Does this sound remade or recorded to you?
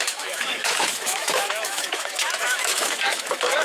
remade